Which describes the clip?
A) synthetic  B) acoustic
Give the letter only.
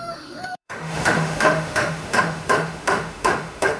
A